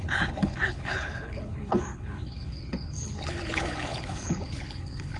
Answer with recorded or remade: remade